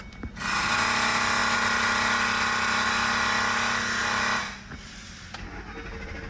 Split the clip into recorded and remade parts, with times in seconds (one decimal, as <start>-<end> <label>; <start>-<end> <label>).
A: 0.0-6.3 recorded